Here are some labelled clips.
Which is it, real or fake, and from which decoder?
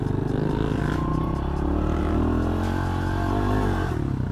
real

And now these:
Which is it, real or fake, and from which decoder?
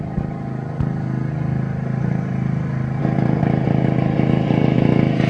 real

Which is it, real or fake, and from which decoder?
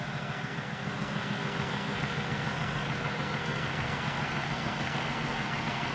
fake, codec, SNAC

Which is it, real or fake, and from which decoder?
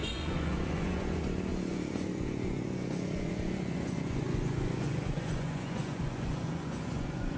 fake, vocoder, Vocos